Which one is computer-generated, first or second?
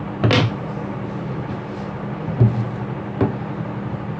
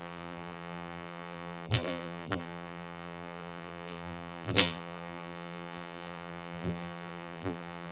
second